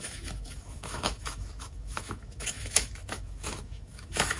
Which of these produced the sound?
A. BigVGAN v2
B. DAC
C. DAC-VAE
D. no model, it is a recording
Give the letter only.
C